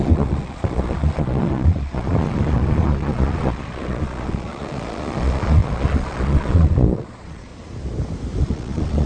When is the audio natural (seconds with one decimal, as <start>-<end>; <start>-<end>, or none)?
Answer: 7.5-8.4